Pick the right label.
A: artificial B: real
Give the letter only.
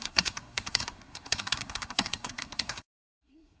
A